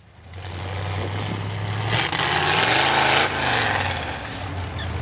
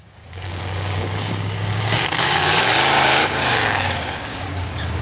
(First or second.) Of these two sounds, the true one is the first